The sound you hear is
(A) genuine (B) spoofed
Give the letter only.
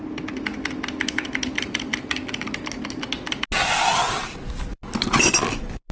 A